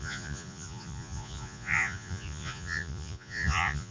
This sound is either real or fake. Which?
fake